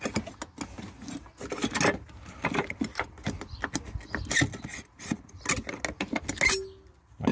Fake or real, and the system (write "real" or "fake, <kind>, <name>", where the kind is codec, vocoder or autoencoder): real